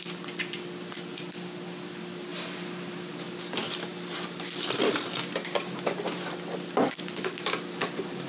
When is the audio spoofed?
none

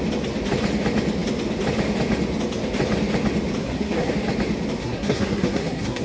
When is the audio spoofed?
3.6-4.1 (codec, SNAC); 4.8-6.0

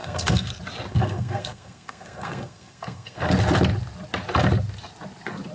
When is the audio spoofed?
0.0-0.5 (codec, SNAC); 0.9-3.3

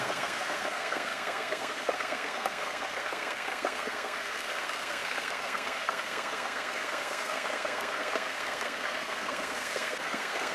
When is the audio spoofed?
0.0-10.5 (codec, SNAC)